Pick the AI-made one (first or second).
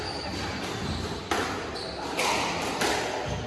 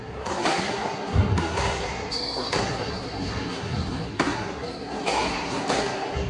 second